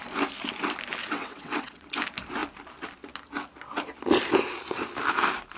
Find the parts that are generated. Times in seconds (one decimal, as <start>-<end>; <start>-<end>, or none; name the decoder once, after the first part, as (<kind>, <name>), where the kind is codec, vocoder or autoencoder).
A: 1.0-1.9 (vocoder, WaveNeXt)